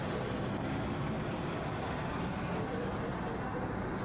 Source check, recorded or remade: recorded